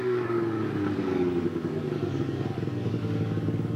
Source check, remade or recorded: remade